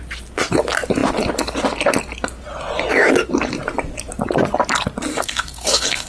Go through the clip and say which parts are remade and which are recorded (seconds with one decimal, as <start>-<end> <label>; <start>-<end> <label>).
0.0-5.1 recorded; 5.1-6.1 remade